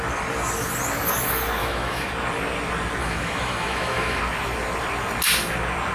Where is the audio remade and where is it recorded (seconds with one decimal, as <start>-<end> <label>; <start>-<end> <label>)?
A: 0.0-1.6 recorded; 1.6-2.1 remade; 2.1-3.0 recorded; 3.0-4.2 remade; 4.2-5.9 recorded